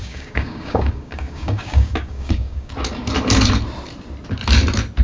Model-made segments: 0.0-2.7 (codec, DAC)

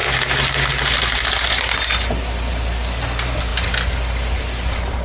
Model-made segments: none

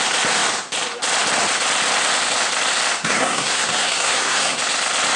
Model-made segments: 3.0-4.6 (codec, SNAC)